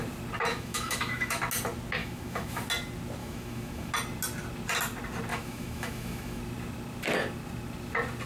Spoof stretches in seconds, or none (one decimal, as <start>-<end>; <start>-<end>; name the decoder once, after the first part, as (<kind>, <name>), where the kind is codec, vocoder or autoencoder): 0.5-1.4 (autoencoder, DAC-VAE); 2.0-2.6; 3.2-3.9; 5.3-6.4